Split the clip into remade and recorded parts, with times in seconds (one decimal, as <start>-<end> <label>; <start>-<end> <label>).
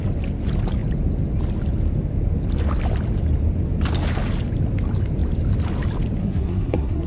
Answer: 0.0-6.2 recorded; 6.2-7.1 remade